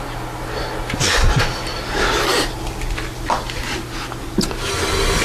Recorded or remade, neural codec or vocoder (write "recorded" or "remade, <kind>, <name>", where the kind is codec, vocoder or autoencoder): recorded